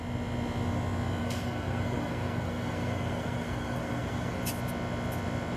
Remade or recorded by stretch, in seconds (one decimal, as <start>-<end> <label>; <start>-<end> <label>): 0.0-1.2 recorded; 1.2-4.4 remade; 4.4-5.6 recorded